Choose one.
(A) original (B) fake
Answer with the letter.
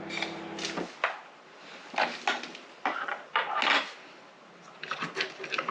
A